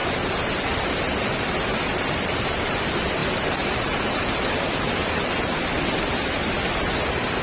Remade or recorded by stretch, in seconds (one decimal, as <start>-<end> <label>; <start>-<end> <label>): 0.0-7.4 recorded